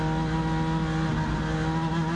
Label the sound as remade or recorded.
recorded